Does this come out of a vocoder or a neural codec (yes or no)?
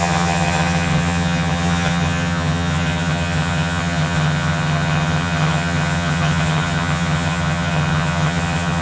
yes